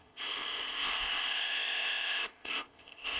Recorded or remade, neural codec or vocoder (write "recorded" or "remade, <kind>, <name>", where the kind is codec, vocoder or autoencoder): remade, codec, ZipCodec